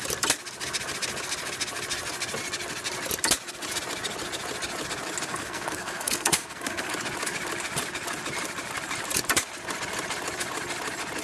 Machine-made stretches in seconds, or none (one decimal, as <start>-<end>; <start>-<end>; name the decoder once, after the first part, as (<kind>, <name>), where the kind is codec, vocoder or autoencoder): 5.3-6.9 (codec, SNAC)